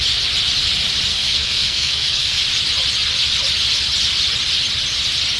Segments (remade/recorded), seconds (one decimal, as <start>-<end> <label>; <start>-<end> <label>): 0.0-1.1 recorded; 1.1-2.4 remade; 2.4-5.4 recorded